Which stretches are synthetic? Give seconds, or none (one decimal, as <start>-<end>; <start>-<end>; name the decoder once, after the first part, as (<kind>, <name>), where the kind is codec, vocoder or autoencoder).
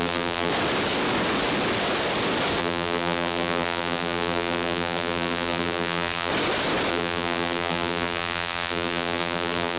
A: 0.0-0.5 (vocoder, BigVGAN v2); 2.6-6.3; 6.9-9.8